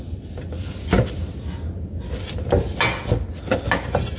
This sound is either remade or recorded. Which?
recorded